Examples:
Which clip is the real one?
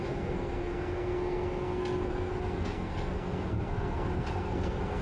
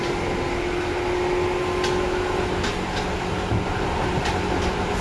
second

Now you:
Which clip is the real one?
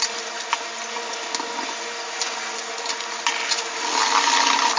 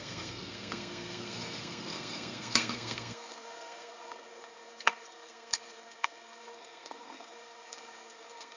first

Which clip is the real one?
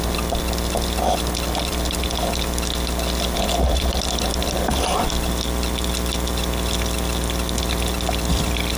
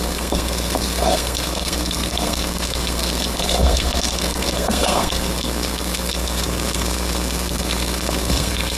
first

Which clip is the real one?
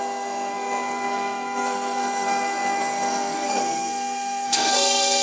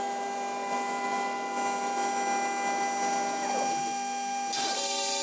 second